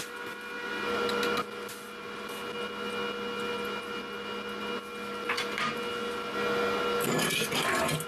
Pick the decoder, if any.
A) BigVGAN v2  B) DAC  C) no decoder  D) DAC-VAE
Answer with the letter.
C